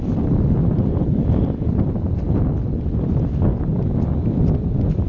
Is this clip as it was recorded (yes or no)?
yes